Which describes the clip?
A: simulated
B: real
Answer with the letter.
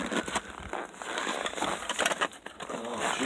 B